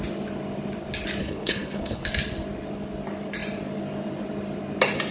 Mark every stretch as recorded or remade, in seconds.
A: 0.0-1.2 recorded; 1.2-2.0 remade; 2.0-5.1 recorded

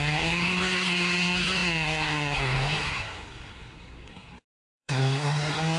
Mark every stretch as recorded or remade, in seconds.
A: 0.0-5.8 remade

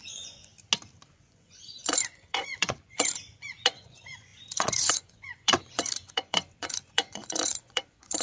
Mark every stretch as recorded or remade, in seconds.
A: 0.0-0.5 remade; 0.5-1.1 recorded; 1.1-8.2 remade

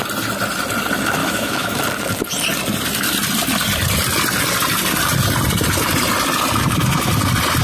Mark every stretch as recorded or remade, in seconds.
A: 0.0-1.2 recorded; 1.2-1.8 remade; 1.8-7.6 recorded

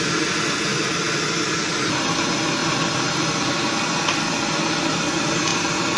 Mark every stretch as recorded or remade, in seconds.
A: 0.0-2.6 recorded; 2.6-3.5 remade; 3.5-6.0 recorded

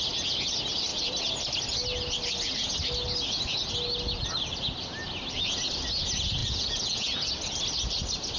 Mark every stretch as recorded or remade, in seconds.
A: 0.0-6.4 recorded; 6.4-7.3 remade; 7.3-8.4 recorded